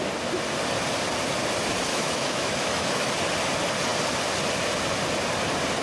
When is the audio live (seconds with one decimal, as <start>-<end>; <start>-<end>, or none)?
0.0-1.9; 3.1-5.8